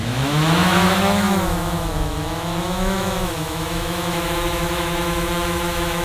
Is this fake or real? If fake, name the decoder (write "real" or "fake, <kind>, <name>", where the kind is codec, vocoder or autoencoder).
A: fake, autoencoder, DAC-VAE